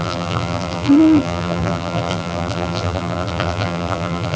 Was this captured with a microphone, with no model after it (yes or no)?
no